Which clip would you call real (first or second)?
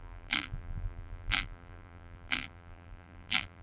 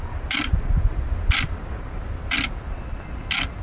second